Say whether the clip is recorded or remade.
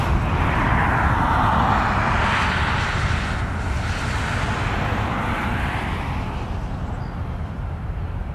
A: recorded